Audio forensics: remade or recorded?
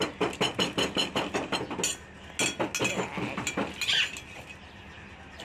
recorded